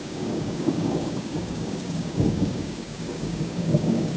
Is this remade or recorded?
remade